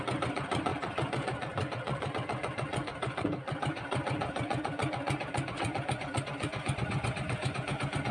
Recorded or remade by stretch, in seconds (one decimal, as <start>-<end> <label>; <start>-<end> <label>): 0.0-8.1 remade